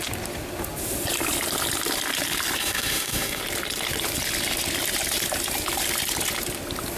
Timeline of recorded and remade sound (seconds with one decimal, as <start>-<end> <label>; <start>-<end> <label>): 0.0-2.6 recorded; 2.6-3.4 remade; 3.4-7.0 recorded